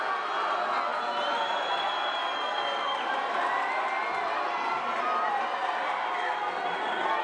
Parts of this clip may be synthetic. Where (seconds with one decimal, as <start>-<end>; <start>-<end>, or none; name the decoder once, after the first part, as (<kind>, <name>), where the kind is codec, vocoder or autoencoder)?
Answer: none